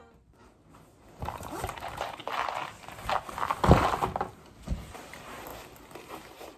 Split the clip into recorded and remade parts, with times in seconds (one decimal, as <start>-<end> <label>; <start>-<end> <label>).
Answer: 0.0-0.4 remade; 0.4-1.4 recorded; 1.4-2.2 remade; 2.2-5.0 recorded; 5.0-5.5 remade; 5.5-6.1 recorded; 6.1-6.6 remade